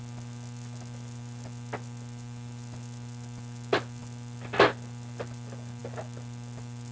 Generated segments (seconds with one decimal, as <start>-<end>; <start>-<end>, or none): none